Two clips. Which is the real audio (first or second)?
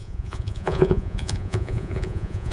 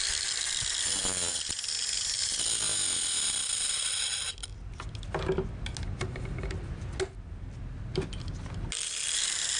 second